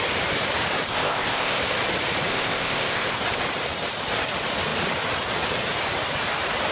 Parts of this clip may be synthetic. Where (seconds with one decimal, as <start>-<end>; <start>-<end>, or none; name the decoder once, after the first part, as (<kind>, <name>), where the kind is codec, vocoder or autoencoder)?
0.9-1.6 (codec, ZipCodec); 2.3-3.2